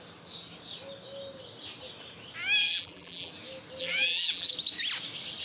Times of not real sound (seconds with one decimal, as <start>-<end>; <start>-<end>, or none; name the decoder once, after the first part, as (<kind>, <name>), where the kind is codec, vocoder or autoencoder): 2.6-3.3 (vocoder, BigVGAN v2); 3.8-4.5